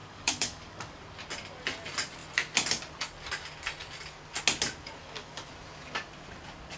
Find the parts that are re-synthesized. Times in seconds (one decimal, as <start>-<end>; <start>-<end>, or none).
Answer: 0.0-1.0; 5.0-5.5